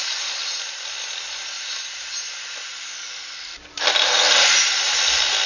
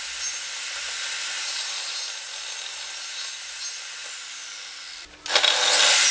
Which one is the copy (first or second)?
first